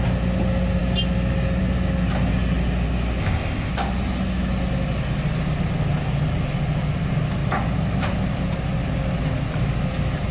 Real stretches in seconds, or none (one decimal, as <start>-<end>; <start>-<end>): 0.0-3.2; 3.7-10.3